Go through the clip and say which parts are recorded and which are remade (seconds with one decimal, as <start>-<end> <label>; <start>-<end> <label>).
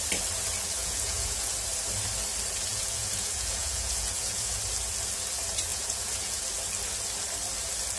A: 0.0-0.8 recorded; 0.8-1.5 remade; 1.5-2.7 recorded; 2.7-4.5 remade; 4.5-5.7 recorded; 5.7-6.4 remade; 6.4-8.0 recorded